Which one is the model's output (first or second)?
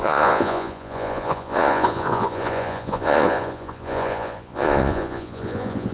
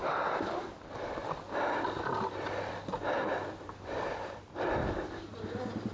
first